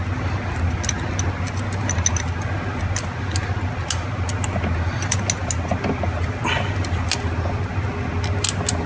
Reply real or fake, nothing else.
real